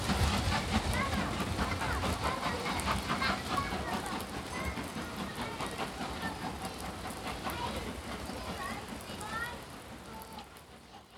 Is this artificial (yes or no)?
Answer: no